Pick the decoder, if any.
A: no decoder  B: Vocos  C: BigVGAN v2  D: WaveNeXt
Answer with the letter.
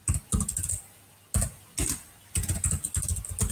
A